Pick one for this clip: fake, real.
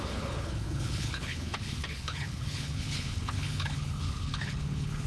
fake